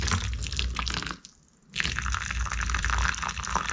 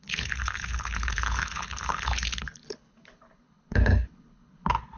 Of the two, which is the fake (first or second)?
second